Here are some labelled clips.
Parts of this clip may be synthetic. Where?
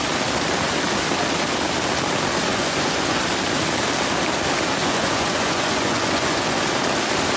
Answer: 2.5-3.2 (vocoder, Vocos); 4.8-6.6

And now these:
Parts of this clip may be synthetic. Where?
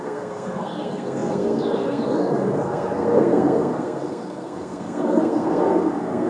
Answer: 0.0-6.3 (codec, SNAC)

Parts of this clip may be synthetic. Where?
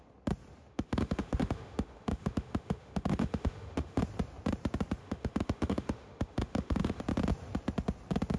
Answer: 0.7-4.0 (autoencoder, DAC-VAE); 5.0-7.0